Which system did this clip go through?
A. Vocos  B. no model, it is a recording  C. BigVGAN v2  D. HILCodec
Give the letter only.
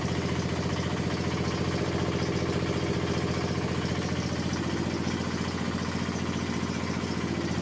B